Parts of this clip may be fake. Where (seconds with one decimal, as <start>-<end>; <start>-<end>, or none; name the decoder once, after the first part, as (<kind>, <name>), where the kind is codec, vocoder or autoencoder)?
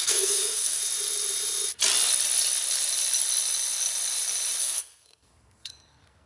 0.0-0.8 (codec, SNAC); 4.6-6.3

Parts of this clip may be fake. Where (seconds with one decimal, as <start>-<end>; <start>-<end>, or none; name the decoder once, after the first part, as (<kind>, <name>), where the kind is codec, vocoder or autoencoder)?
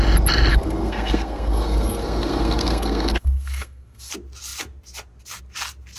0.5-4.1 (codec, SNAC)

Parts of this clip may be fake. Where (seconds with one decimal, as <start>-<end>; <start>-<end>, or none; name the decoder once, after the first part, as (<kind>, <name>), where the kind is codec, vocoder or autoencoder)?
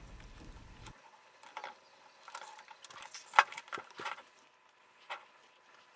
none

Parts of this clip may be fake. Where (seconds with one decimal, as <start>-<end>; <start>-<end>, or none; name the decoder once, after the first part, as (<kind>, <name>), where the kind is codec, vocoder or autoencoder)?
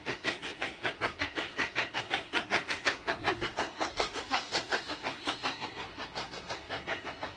0.0-7.4 (codec, SNAC)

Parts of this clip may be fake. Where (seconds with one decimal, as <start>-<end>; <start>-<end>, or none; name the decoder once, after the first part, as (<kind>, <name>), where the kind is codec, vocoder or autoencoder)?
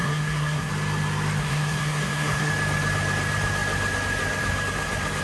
0.0-0.7 (codec, SNAC); 1.4-2.5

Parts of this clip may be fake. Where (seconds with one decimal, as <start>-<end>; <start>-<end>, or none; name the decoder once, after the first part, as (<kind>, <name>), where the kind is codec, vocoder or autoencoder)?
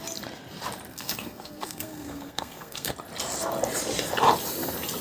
0.9-2.9 (codec, SNAC)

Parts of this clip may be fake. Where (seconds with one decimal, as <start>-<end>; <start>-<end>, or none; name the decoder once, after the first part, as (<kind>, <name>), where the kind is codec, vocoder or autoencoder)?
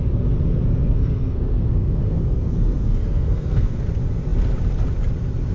0.8-3.8 (codec, SNAC)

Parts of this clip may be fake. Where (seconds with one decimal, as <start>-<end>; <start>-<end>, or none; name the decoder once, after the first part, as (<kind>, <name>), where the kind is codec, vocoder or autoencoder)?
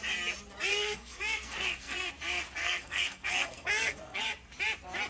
0.7-2.1 (codec, SNAC); 2.6-4.2